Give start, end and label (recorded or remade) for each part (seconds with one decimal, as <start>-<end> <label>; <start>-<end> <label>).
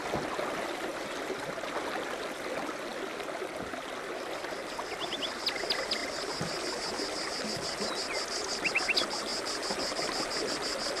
0.0-0.9 recorded; 0.9-1.5 remade; 1.5-11.0 recorded